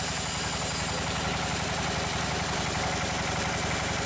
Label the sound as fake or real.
real